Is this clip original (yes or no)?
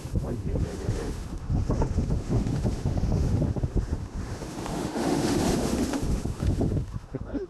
no